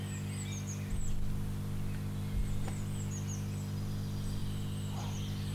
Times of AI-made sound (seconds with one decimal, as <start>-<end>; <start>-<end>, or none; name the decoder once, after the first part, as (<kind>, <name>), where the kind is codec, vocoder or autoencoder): none

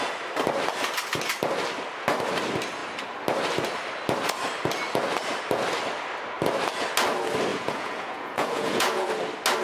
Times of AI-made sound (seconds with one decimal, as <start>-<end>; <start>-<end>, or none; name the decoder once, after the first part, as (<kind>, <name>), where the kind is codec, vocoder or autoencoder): 7.5-9.1 (vocoder, Vocos)

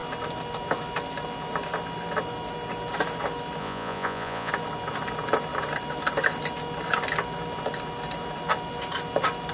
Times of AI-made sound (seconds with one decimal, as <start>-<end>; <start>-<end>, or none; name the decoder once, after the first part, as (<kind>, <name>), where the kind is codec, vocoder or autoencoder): 3.6-4.5 (vocoder, Vocos)

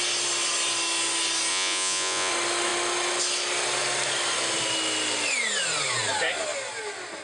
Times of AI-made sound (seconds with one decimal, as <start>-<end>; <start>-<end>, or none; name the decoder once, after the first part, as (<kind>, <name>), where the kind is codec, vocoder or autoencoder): 1.5-2.3 (vocoder, Vocos)

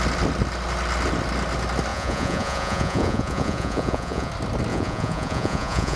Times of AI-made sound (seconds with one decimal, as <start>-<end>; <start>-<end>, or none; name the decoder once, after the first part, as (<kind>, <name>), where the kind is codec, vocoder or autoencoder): 1.9-4.3 (vocoder, Vocos); 4.7-6.0